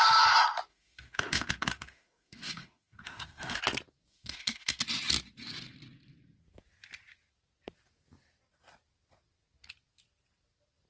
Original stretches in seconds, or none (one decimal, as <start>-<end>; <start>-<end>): 0.0-0.7; 3.6-4.1; 4.8-10.9